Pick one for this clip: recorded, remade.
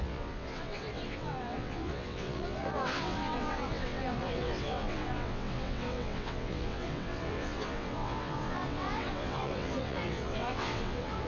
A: remade